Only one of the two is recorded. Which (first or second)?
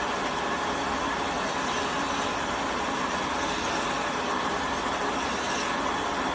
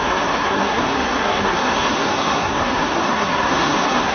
first